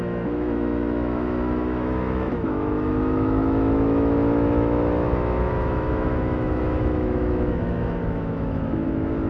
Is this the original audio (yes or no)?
no